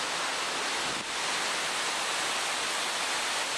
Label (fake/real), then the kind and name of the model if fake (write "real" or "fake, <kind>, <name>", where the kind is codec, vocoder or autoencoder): real